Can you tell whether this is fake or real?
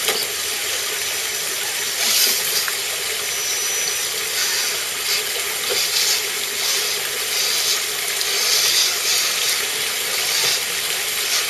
real